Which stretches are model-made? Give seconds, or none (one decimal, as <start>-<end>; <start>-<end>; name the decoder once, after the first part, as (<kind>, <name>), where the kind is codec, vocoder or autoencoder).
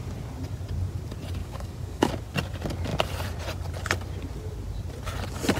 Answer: 1.4-2.1 (codec, DAC)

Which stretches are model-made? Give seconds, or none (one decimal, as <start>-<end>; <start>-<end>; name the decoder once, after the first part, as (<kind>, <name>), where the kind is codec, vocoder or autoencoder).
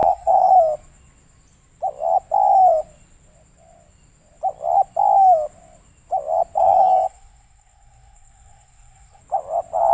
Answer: 0.0-0.5 (codec, SNAC); 6.6-9.2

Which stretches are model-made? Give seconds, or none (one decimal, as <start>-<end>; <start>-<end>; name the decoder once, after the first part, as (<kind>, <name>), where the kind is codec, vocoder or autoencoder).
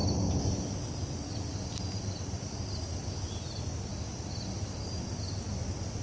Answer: 1.5-2.4 (vocoder, BigVGAN v2); 3.9-5.0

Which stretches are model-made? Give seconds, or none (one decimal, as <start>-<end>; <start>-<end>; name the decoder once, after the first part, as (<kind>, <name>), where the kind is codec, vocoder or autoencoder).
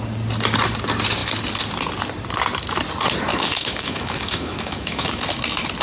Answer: 3.3-5.2 (autoencoder, DAC-VAE)